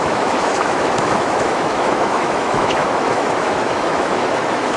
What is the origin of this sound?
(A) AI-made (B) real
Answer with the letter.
A